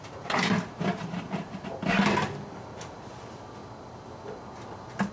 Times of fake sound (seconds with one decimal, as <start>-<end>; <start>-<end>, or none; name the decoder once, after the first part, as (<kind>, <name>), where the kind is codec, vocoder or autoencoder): none